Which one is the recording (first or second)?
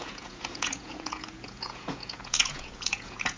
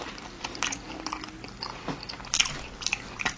second